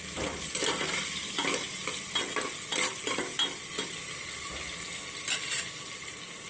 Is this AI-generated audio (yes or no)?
no